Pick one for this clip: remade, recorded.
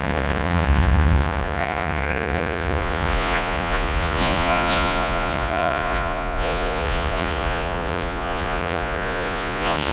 remade